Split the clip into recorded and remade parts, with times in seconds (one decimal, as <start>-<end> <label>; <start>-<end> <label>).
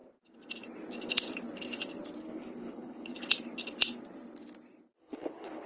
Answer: 0.0-2.2 recorded; 2.2-3.1 remade; 3.1-5.0 recorded; 5.0-5.7 remade